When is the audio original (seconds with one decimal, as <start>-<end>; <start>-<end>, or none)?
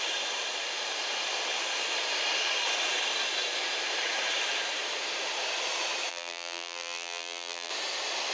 0.0-6.1; 7.7-8.3